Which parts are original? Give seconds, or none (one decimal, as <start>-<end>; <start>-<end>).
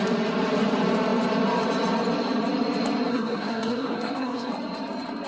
0.0-3.1; 4.5-5.3